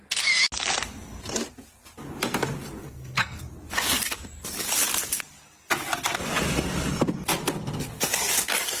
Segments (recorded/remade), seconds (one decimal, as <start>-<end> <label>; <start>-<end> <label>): 0.0-2.8 recorded; 2.8-3.4 remade; 3.4-8.8 recorded